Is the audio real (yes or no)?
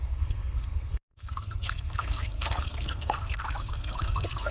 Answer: no